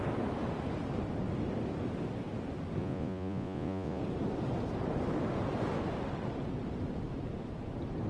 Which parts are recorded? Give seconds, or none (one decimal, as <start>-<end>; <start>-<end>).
0.0-2.8; 4.0-8.1